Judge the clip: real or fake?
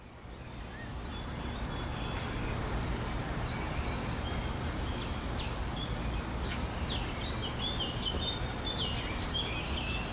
real